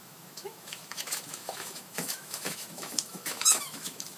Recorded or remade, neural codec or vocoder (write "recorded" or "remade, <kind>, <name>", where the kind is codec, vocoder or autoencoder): remade, autoencoder, DAC-VAE